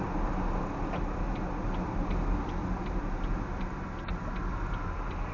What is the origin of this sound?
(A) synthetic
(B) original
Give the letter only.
B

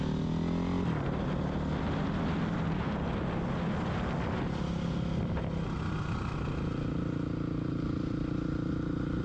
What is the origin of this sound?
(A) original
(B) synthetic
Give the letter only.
A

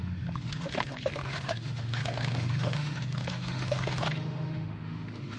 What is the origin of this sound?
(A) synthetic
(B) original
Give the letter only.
A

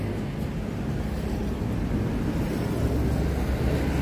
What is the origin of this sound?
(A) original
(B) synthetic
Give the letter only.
A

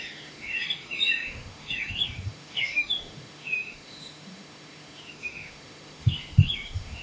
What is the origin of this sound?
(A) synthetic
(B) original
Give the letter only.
A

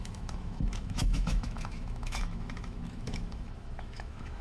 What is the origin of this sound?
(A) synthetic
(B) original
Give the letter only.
A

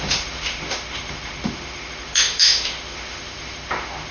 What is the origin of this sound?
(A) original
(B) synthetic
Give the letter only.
B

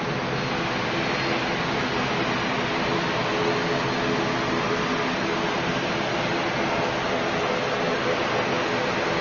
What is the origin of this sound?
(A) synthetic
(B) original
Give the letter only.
B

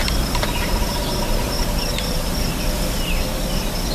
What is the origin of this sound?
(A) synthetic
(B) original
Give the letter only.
B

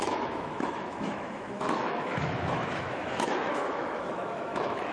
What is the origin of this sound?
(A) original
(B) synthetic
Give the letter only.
B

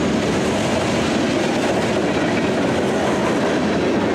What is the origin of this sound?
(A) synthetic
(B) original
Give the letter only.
B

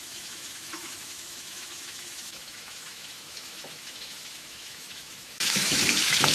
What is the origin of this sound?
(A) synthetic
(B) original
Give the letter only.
A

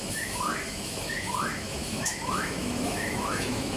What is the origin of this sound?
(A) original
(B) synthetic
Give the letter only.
B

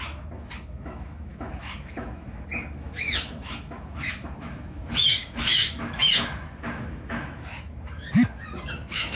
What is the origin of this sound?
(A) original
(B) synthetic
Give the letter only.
B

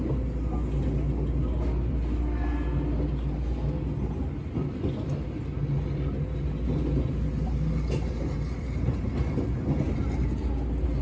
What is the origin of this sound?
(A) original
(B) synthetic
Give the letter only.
A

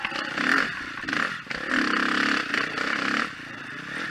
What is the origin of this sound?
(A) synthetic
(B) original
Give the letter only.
B